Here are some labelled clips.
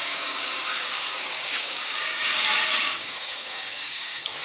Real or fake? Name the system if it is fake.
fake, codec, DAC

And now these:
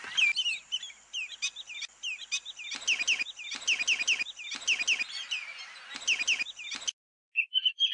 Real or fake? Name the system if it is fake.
real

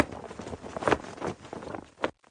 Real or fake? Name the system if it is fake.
real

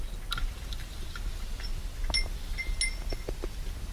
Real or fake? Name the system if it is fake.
real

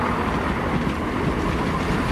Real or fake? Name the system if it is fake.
real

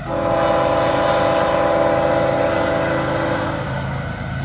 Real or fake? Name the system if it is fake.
real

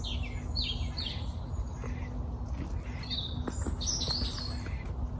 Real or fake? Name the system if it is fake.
real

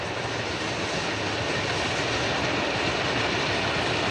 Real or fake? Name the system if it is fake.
real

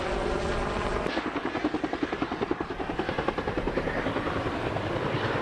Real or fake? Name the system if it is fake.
real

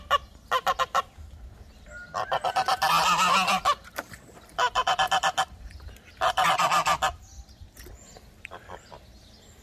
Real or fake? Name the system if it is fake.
real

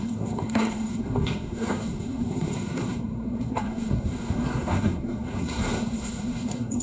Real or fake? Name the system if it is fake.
fake, codec, SNAC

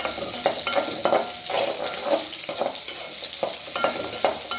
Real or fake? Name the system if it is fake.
real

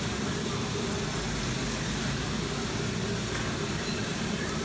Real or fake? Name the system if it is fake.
real